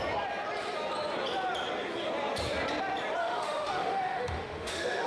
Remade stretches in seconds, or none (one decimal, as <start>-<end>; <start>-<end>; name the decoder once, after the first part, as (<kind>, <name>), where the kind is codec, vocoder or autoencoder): 3.2-5.1 (autoencoder, DAC-VAE)